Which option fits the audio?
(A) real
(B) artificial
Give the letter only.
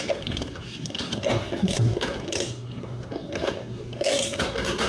B